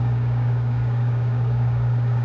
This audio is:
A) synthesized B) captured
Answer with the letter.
A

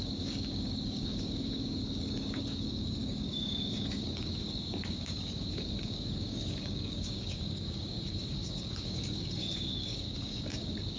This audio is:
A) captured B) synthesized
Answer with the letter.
B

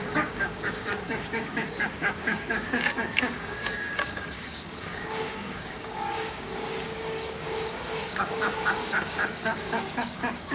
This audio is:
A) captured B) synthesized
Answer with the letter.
B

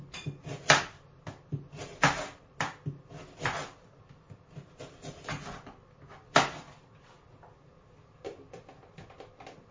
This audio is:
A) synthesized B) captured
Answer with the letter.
B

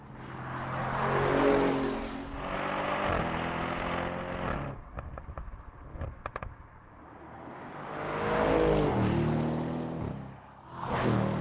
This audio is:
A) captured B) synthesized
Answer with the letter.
A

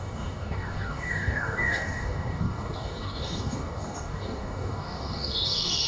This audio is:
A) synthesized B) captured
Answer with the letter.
A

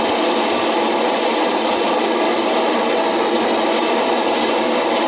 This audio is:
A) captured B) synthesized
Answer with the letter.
A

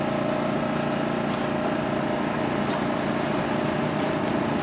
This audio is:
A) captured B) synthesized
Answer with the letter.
A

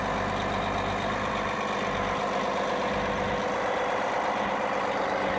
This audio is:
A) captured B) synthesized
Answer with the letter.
A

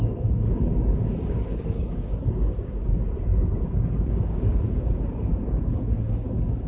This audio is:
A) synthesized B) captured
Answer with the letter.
A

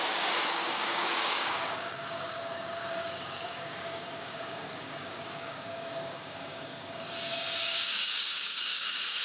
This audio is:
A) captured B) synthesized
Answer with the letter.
B